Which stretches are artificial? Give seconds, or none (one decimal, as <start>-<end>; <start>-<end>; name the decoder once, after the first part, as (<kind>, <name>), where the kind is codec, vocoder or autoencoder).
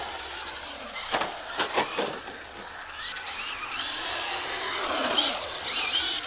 0.0-1.0 (vocoder, BigVGAN v2); 4.8-6.3